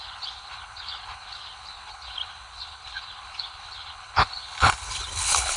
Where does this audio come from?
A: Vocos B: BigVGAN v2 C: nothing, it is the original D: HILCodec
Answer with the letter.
D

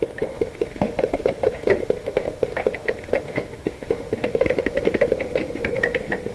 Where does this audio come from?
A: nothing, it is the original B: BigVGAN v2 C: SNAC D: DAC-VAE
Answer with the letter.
D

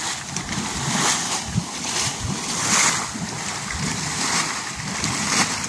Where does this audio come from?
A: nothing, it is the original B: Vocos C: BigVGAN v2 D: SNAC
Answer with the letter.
A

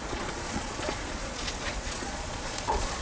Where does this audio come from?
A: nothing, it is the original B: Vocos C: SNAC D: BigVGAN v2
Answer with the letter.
B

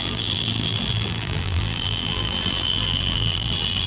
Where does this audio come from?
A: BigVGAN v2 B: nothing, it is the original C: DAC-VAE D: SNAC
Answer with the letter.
A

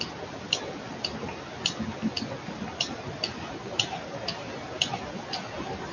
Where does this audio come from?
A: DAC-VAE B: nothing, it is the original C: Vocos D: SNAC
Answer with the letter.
B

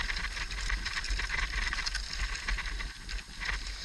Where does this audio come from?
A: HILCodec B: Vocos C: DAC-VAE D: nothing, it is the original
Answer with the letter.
D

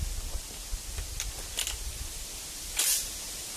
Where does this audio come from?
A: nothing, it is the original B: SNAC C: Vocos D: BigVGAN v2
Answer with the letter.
A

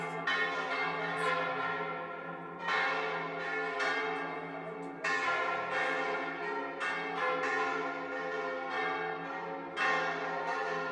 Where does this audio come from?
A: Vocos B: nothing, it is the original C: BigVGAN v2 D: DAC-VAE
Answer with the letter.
B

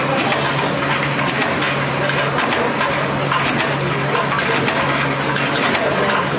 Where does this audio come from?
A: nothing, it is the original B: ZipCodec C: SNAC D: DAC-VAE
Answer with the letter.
A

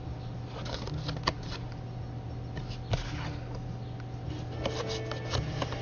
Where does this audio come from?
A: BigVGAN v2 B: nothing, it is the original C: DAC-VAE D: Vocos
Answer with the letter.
B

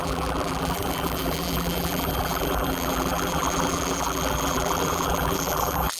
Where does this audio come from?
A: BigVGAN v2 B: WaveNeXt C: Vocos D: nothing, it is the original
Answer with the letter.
A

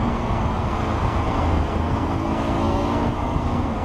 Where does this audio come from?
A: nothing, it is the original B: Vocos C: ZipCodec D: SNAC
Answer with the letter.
D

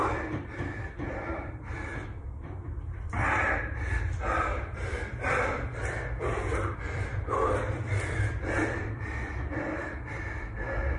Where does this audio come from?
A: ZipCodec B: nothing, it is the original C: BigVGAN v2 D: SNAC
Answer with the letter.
C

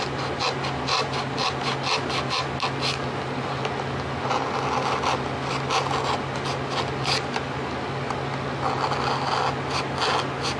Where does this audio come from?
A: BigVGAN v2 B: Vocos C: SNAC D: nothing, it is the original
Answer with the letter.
D